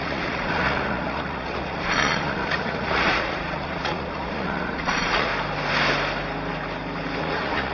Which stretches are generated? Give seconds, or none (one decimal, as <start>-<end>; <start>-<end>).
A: 0.0-5.3; 7.2-7.7